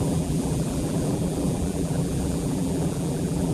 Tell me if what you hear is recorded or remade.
remade